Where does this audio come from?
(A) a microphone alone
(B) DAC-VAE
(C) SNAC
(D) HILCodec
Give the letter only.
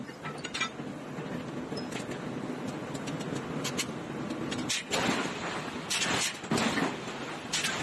A